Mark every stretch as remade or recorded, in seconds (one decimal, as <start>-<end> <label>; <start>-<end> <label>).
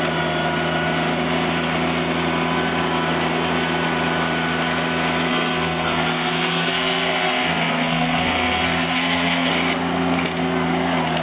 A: 0.0-5.3 recorded; 5.3-9.5 remade; 9.5-11.2 recorded